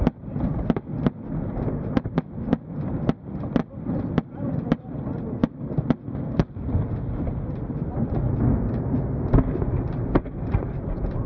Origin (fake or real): real